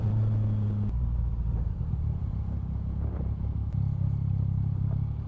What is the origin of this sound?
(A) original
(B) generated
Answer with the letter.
A